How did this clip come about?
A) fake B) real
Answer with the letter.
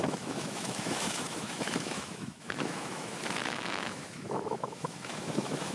A